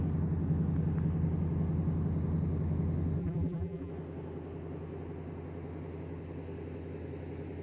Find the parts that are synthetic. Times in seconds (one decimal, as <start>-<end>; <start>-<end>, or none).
3.2-3.9